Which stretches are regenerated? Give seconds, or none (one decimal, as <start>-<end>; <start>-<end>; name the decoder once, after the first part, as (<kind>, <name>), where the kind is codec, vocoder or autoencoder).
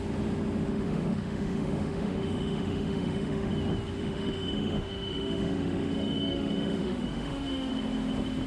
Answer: 0.7-3.5 (autoencoder, DAC-VAE); 4.0-7.7